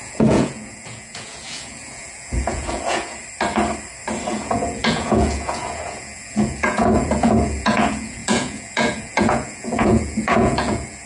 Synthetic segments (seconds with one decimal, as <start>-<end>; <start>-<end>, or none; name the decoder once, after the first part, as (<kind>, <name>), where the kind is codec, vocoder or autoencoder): 0.0-3.2 (vocoder, Vocos); 4.3-11.1